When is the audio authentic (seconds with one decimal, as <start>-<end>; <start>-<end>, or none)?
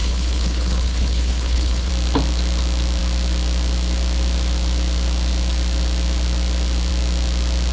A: 1.9-7.7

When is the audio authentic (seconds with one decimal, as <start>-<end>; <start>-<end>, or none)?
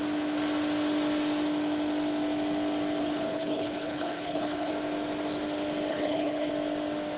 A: 0.0-3.0; 4.7-5.9; 6.5-7.2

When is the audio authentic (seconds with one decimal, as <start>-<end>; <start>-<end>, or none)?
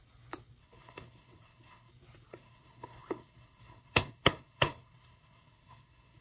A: 0.0-0.6; 1.9-2.3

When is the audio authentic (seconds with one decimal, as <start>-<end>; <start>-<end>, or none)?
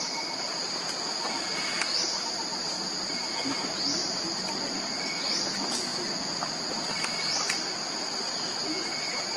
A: 0.0-9.4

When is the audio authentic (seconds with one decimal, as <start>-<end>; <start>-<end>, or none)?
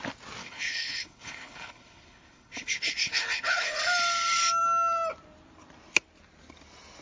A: 0.0-0.4; 3.8-7.0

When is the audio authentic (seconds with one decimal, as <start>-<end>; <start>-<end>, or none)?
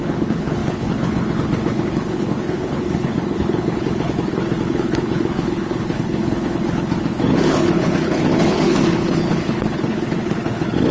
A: none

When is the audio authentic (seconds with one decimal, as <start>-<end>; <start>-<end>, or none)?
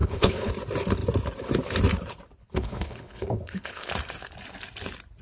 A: 0.5-2.4; 3.9-5.2